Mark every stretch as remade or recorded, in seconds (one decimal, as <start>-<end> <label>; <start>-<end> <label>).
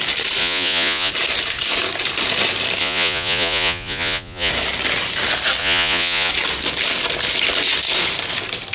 0.0-0.4 recorded; 0.4-1.1 remade; 1.1-2.8 recorded; 2.8-4.5 remade; 4.5-5.6 recorded; 5.6-6.3 remade; 6.3-8.7 recorded